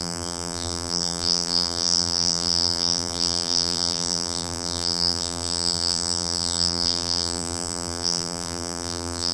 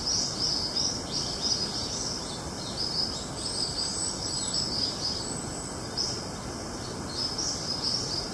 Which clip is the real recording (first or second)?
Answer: second